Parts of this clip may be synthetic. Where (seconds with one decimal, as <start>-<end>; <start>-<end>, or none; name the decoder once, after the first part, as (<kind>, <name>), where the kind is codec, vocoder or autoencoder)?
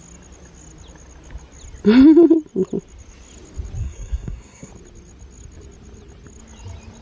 3.8-4.7 (codec, SNAC)